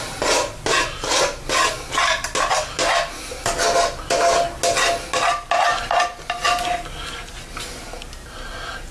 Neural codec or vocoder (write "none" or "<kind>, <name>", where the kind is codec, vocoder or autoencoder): none